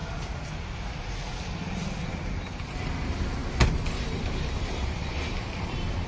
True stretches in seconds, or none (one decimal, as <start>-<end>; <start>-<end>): 0.0-6.1